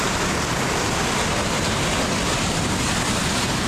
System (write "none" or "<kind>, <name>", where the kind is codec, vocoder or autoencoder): none